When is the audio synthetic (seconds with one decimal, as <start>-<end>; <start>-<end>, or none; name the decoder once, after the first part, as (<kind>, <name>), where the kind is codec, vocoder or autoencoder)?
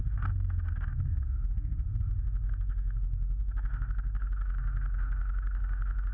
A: 0.0-6.1 (autoencoder, DAC-VAE)